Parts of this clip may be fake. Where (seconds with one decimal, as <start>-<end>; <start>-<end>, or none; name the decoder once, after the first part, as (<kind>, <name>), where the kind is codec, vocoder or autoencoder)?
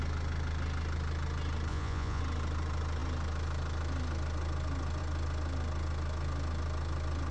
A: 1.7-2.2 (vocoder, Vocos)